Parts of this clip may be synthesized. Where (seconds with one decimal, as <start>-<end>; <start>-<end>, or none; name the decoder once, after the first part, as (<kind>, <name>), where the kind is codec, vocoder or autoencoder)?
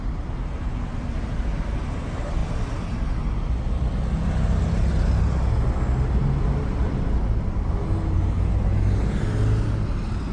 none